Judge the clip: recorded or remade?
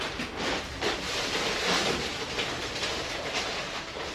remade